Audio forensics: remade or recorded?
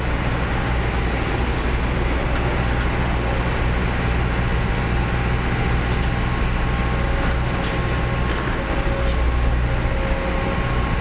recorded